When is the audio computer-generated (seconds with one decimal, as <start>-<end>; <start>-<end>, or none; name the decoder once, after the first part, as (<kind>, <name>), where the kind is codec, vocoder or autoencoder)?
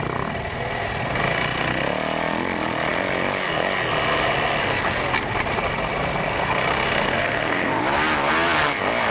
7.0-7.8 (codec, SNAC)